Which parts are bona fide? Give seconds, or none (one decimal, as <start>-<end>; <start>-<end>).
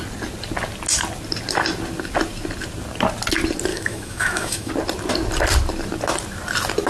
0.0-3.7; 4.7-6.9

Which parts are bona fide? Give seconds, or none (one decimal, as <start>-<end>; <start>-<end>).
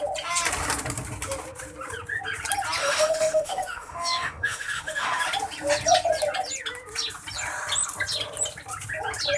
0.0-2.8; 5.2-9.4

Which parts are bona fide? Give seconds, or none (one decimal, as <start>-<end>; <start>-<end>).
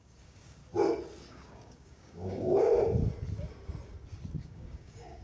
0.6-1.3; 2.7-4.4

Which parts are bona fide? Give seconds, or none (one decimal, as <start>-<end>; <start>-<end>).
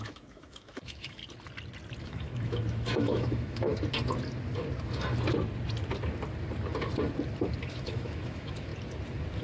1.2-2.0; 3.7-7.7; 8.7-9.4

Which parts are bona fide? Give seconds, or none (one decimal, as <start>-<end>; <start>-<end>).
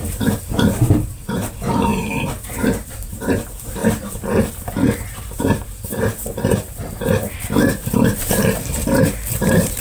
none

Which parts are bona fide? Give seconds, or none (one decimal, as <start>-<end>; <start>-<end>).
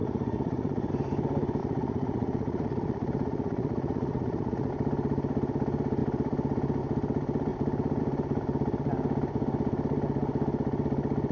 0.9-1.6; 4.7-11.3